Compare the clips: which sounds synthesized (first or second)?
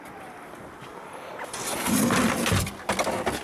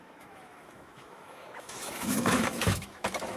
second